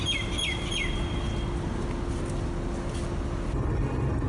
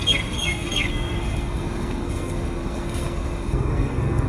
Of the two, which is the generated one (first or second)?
second